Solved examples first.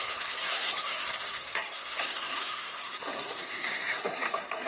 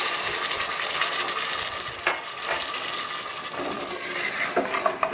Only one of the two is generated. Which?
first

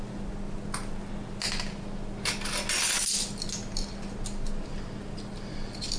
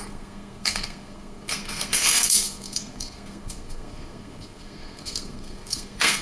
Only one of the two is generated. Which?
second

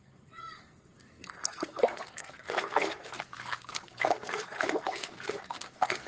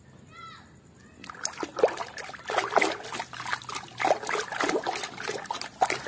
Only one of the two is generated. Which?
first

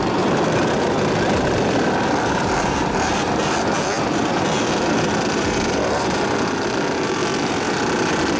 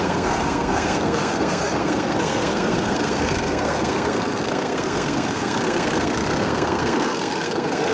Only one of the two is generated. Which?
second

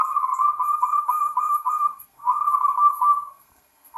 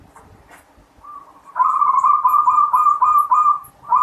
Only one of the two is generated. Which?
first